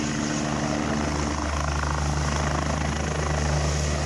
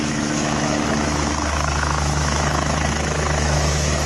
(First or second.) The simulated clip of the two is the second